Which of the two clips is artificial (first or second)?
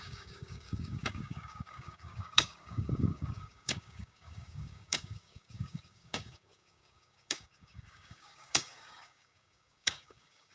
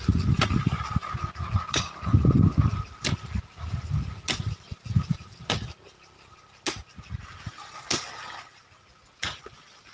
first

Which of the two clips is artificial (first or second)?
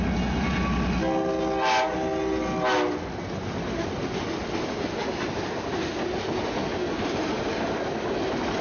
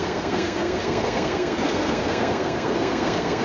second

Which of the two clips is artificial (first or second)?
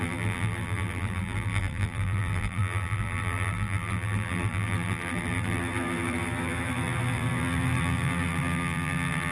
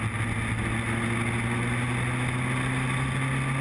first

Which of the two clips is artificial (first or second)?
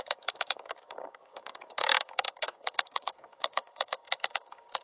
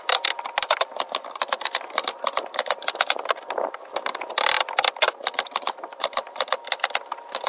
first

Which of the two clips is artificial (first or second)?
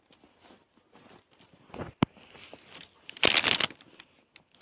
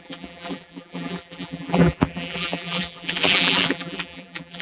second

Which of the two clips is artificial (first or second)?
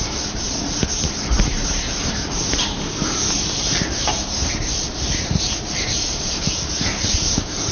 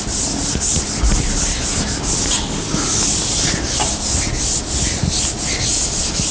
first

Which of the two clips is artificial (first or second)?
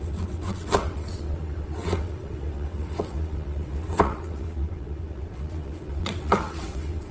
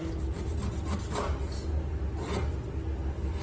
first